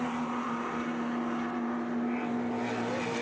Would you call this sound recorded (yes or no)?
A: yes